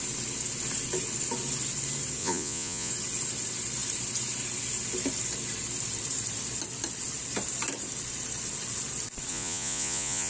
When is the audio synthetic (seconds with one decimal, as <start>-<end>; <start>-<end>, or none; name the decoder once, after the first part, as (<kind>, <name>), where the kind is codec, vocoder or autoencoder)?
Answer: 2.2-2.9 (vocoder, Vocos); 9.3-10.3